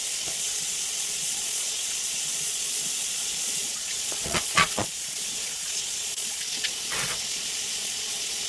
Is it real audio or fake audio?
fake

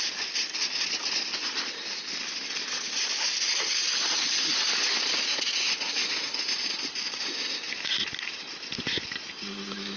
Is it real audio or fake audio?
real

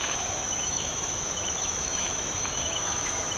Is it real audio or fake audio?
fake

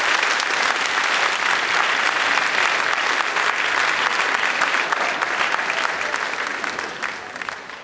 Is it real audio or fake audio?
real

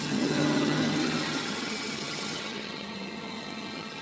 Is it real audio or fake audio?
fake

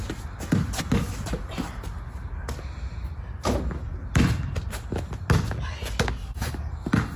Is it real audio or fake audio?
real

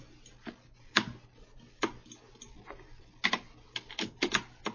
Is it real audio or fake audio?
real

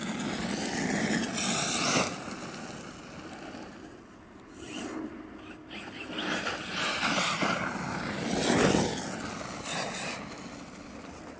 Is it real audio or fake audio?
real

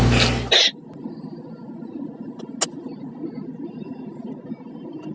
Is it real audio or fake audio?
real